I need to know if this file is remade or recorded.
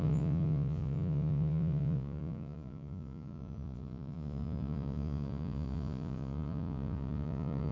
remade